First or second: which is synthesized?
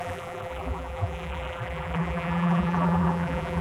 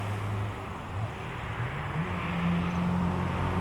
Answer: first